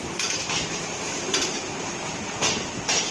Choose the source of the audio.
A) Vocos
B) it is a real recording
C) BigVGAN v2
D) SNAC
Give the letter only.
C